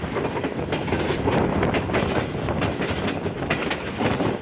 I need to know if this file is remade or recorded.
recorded